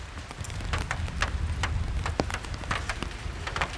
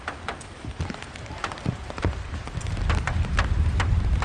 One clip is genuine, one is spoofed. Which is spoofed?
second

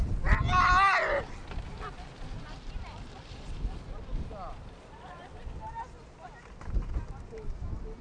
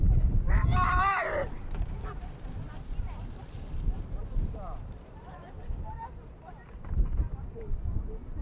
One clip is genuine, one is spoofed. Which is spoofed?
second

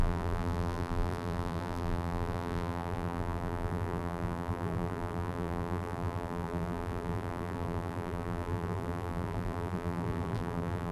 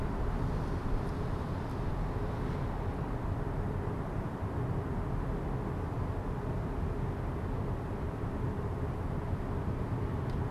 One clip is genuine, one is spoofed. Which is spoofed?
first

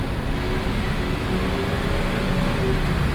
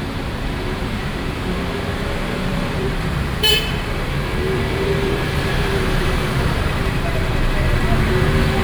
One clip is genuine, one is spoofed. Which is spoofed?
second